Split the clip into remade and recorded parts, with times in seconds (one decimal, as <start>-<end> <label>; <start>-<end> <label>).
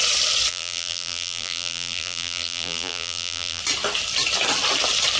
0.0-0.5 recorded; 0.5-3.6 remade; 3.6-5.2 recorded